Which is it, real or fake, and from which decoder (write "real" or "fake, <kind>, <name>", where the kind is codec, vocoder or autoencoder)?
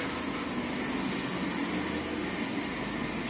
real